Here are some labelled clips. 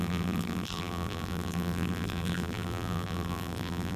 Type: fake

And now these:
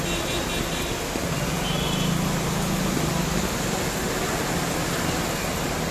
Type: real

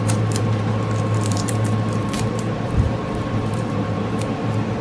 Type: fake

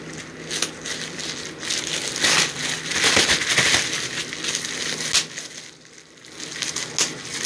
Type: real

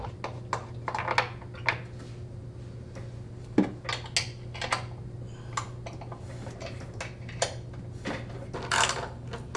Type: real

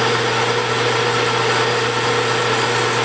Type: real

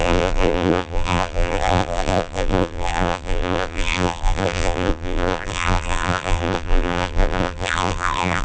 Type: fake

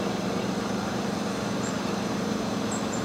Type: fake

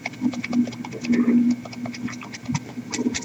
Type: real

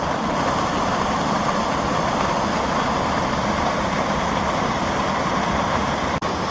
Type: fake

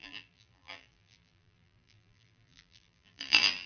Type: fake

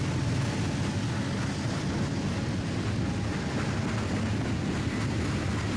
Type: real